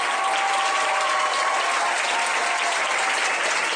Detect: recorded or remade recorded